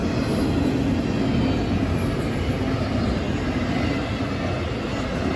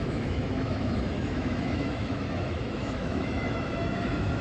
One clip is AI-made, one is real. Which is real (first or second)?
first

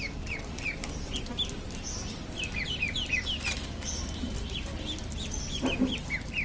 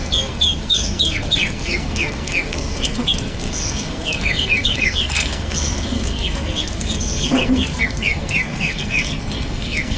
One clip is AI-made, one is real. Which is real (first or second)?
first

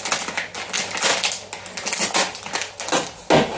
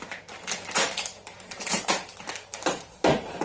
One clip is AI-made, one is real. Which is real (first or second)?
first